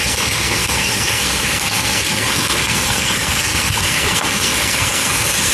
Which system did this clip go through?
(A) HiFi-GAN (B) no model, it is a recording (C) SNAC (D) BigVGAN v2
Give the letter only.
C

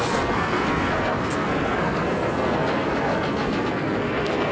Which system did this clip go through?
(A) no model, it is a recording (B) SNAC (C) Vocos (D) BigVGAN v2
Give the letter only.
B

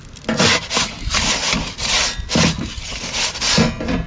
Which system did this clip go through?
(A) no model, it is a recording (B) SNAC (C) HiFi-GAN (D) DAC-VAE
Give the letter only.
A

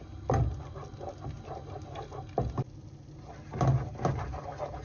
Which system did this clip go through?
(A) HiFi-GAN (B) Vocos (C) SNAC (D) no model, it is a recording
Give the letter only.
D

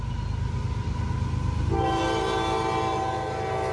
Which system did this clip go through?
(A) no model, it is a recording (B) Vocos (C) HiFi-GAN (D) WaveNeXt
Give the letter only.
A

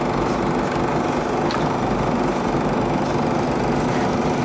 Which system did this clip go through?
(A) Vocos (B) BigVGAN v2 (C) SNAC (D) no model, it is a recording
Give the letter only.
D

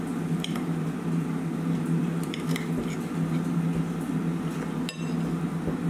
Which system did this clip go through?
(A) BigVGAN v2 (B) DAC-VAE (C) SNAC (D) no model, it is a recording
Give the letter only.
D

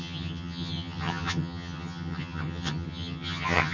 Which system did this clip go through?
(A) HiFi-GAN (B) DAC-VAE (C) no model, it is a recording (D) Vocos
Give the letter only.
A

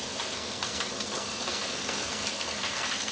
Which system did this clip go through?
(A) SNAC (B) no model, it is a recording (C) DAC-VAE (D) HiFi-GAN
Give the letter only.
A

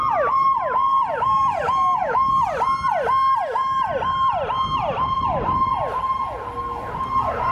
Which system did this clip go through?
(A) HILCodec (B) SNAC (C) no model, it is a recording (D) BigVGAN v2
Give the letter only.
C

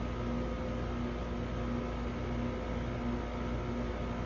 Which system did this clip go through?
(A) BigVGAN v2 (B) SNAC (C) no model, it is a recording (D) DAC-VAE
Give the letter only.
C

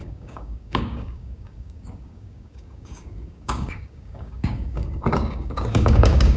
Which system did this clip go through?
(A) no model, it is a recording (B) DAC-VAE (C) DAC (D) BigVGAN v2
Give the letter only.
C